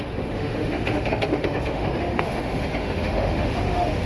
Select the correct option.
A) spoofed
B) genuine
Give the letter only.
A